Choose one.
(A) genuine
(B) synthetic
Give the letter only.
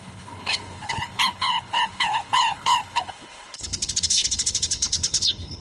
B